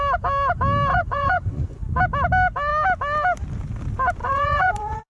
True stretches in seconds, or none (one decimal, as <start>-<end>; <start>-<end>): 0.0-0.9; 1.8-4.2